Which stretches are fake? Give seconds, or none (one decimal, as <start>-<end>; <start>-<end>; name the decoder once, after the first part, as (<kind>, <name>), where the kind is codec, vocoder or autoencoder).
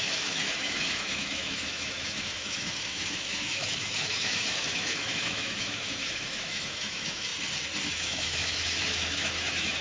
0.0-7.3 (autoencoder, DAC-VAE); 7.9-9.8